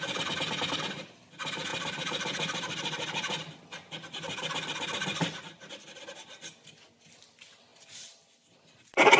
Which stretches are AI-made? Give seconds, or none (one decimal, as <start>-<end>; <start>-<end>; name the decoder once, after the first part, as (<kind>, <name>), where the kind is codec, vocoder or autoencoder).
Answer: none